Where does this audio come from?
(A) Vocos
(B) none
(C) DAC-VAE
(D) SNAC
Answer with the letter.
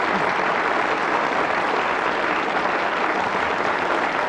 B